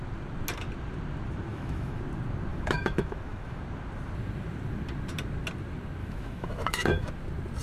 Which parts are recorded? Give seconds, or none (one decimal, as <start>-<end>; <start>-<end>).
0.0-1.5; 2.0-2.5; 3.6-6.0; 7.1-7.6